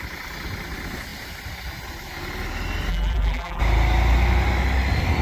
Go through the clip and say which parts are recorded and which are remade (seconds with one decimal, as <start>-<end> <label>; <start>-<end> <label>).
0.0-2.9 recorded; 2.9-3.6 remade; 3.6-5.2 recorded